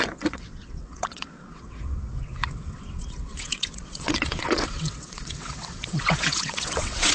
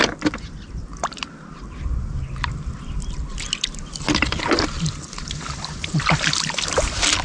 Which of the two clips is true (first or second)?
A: second